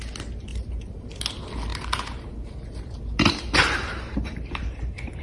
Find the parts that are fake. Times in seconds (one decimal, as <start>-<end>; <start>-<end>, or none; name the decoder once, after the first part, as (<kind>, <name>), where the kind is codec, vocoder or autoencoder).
0.5-1.2 (vocoder, BigVGAN v2); 1.7-4.8